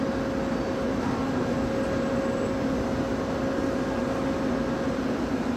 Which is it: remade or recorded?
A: recorded